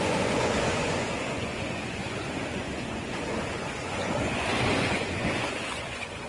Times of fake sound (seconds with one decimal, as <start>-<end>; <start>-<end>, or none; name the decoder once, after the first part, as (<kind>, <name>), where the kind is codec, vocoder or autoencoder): 0.0-6.3 (vocoder, Vocos)